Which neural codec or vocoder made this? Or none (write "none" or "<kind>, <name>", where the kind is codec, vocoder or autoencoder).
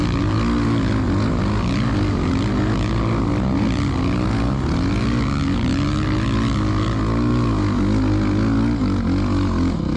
none